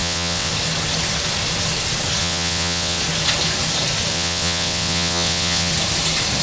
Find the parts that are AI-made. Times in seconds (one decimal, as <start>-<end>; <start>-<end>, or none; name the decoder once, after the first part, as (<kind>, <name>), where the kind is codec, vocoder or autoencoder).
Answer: 0.0-0.5 (vocoder, WaveNeXt); 2.2-3.0; 4.1-5.7